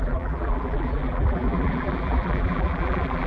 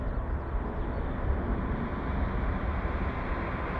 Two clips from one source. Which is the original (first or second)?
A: second